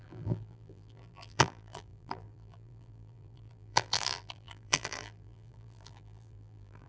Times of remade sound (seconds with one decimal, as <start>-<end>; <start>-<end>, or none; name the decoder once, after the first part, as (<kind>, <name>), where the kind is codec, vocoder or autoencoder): 0.0-6.9 (vocoder, BigVGAN v2)